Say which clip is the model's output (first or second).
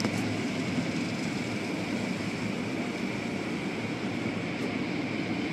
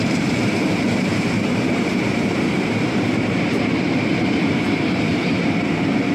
second